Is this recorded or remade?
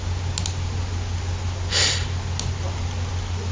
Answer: recorded